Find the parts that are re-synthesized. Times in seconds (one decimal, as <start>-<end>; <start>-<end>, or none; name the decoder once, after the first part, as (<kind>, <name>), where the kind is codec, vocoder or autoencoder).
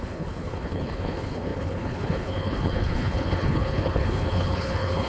0.0-5.1 (codec, HILCodec)